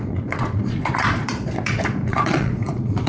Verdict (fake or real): fake